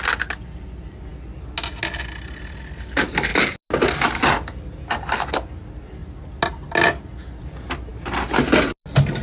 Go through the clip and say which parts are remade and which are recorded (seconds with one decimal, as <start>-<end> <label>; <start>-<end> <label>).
0.0-9.2 recorded